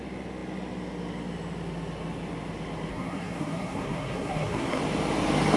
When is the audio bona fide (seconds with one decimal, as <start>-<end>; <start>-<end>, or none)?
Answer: 0.0-2.9; 4.8-5.6